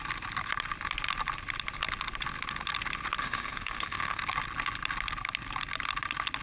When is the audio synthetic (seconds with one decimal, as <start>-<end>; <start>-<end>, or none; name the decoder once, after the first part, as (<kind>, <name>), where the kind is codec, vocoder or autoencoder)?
3.2-4.2 (autoencoder, DAC-VAE)